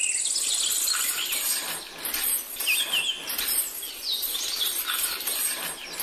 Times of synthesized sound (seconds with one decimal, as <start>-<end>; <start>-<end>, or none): 3.2-3.9